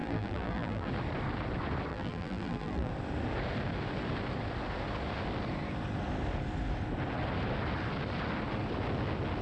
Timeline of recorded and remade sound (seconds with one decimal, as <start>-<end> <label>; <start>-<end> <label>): 0.0-0.9 remade; 0.9-1.9 recorded; 1.9-2.9 remade; 2.9-9.4 recorded